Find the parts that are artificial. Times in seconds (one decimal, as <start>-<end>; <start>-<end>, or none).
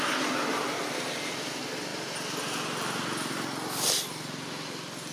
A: none